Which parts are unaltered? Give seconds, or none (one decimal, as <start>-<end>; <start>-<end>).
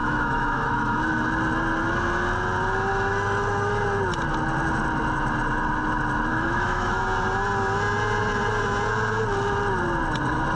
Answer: 1.0-2.9; 3.7-6.3; 7.0-10.6